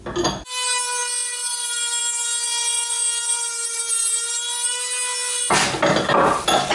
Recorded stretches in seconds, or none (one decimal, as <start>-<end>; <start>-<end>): 0.0-6.7